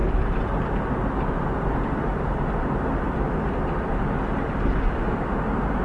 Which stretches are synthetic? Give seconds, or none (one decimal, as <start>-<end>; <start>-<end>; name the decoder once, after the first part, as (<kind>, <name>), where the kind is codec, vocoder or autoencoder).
none